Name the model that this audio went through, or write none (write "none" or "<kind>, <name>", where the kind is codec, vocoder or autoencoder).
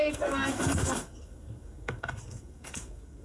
codec, SNAC